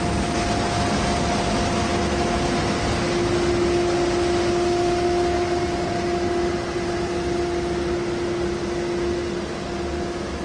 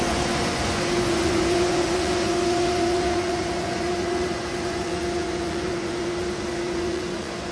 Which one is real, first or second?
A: first